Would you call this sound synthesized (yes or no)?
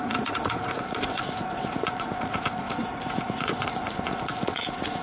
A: yes